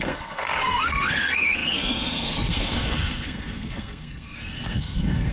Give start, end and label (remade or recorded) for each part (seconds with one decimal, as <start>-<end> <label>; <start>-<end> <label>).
0.0-5.3 remade